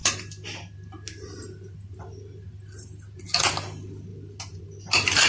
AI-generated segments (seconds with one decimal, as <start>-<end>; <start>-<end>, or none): none